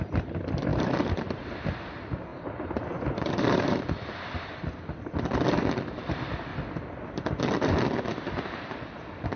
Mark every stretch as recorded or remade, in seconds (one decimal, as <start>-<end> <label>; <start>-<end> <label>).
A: 0.0-0.7 recorded; 0.7-1.4 remade; 1.4-2.3 recorded; 2.3-3.8 remade; 3.8-9.4 recorded